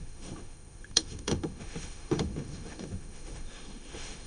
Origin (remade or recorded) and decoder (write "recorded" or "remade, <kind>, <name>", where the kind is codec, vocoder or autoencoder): remade, autoencoder, DAC-VAE